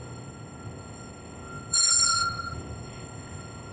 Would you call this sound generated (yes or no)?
yes